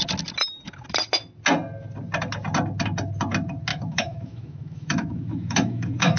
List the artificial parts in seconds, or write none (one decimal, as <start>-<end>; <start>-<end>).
3.7-6.2